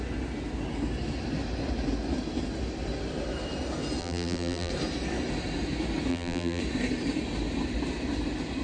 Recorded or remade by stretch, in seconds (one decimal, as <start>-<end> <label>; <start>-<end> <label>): 0.0-4.0 recorded; 4.0-4.7 remade; 4.7-6.1 recorded; 6.1-6.6 remade; 6.6-8.6 recorded